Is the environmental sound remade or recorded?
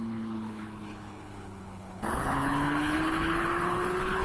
remade